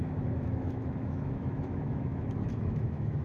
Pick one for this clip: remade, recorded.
remade